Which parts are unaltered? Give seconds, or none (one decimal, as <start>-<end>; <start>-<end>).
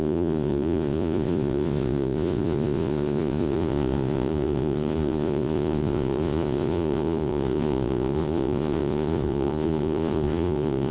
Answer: none